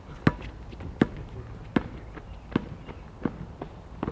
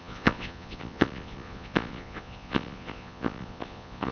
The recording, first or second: first